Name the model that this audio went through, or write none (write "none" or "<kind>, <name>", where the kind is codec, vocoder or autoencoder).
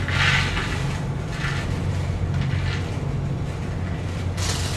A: none